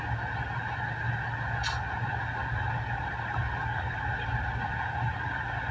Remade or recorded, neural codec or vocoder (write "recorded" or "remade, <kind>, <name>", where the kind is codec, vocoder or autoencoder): recorded